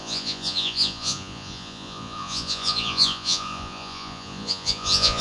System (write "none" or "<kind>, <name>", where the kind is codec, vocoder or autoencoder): vocoder, Vocos